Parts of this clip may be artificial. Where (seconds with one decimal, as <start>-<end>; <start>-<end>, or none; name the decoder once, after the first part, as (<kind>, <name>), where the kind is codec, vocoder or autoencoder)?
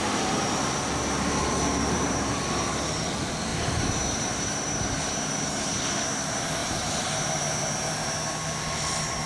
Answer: 0.0-0.6 (vocoder, BigVGAN v2); 1.7-2.4; 3.5-5.8; 6.6-7.4